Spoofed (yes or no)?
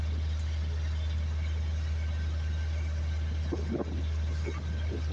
no